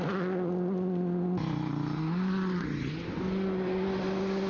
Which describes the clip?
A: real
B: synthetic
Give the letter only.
A